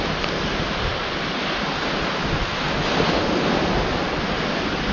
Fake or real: real